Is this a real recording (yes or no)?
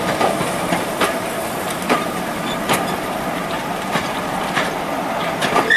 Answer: no